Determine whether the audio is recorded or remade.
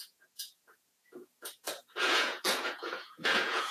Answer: remade